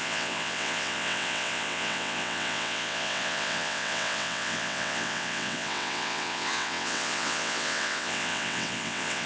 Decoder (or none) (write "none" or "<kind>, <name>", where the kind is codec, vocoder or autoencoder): vocoder, WaveNeXt